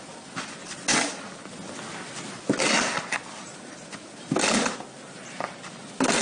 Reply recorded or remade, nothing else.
recorded